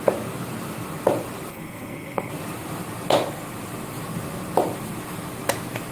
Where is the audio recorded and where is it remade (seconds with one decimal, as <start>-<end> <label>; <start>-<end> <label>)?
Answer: 0.0-1.5 recorded; 1.5-2.3 remade; 2.3-5.9 recorded